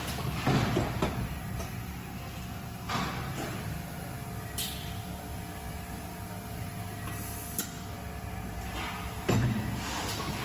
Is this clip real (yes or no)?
yes